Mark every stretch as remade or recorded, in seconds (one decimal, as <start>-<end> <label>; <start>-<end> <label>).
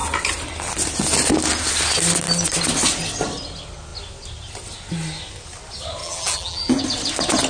0.0-6.0 recorded; 6.0-6.8 remade; 6.8-7.5 recorded